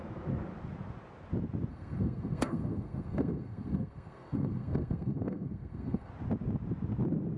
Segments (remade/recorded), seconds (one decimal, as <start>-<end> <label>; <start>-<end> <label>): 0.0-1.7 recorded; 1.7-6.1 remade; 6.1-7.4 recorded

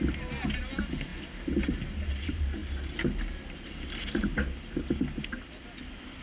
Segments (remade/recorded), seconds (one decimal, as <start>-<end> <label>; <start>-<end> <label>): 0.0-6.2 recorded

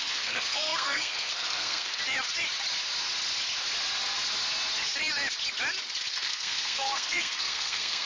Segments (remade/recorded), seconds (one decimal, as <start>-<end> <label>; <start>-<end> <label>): 0.0-2.0 remade; 2.0-6.1 recorded; 6.1-8.1 remade

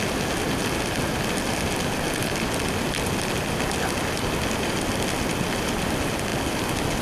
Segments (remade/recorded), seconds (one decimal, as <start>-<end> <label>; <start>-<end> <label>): 0.0-7.0 recorded